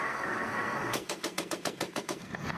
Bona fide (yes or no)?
no